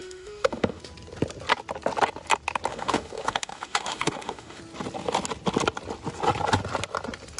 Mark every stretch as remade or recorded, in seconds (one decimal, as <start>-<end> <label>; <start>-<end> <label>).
0.0-0.8 remade; 0.8-2.7 recorded; 2.7-4.6 remade; 4.6-7.4 recorded